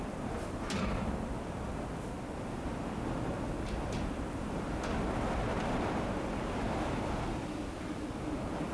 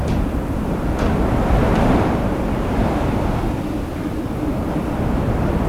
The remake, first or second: second